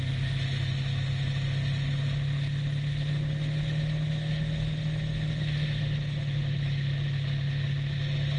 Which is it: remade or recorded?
recorded